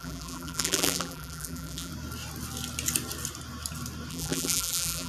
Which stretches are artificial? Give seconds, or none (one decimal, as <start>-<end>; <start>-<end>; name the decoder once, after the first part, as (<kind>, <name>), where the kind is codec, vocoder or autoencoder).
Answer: 0.0-1.9 (vocoder, BigVGAN v2); 4.1-5.1